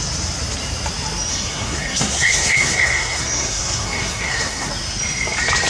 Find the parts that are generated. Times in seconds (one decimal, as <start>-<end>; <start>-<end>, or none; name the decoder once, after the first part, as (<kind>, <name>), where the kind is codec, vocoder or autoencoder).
1.3-4.7 (codec, SNAC)